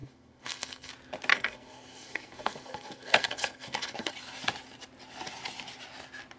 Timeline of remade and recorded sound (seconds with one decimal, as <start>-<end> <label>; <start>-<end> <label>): 0.0-0.9 remade; 0.9-1.3 recorded; 1.3-4.1 remade; 4.1-6.4 recorded